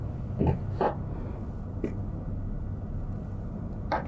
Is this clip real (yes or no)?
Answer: yes